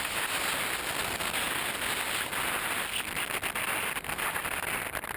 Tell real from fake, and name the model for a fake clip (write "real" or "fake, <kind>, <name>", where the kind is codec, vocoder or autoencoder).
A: real